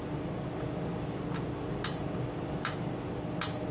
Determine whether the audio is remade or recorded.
recorded